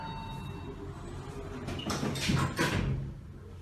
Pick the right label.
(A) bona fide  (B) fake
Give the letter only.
A